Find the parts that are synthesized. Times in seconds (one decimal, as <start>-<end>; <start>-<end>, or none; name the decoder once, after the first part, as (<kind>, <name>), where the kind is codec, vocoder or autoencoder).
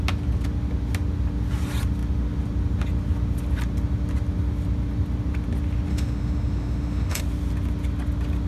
5.9-7.2 (autoencoder, DAC-VAE)